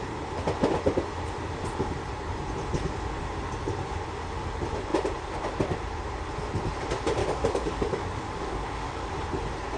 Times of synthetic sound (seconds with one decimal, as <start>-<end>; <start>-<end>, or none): 7.2-9.1